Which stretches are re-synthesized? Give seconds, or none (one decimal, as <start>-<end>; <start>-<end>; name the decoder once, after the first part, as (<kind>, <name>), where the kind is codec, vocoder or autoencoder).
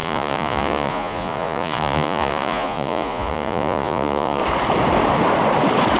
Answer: 0.0-4.4 (vocoder, Vocos)